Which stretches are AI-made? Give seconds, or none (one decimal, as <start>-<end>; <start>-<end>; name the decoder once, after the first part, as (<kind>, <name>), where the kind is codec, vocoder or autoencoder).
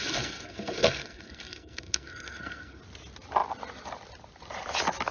0.0-2.8 (codec, SNAC)